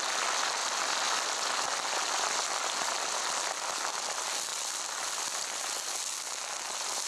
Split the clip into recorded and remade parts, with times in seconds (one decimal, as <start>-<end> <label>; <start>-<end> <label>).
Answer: 0.0-7.1 recorded